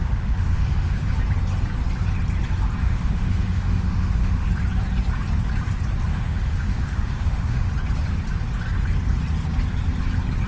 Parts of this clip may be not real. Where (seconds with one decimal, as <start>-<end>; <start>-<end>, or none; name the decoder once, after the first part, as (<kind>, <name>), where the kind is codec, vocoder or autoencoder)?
0.0-1.1 (autoencoder, DAC-VAE); 2.8-4.5; 6.1-7.7